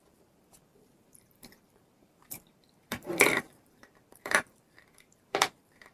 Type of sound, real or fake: fake